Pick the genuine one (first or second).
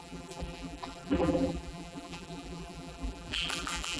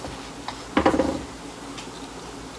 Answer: second